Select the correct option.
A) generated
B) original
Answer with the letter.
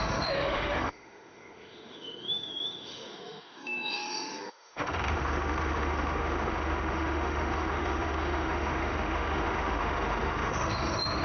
A